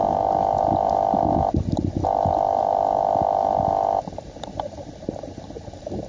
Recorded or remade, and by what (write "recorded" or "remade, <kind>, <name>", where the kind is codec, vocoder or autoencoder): recorded